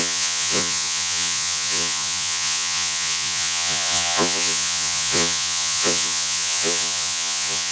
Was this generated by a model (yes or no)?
yes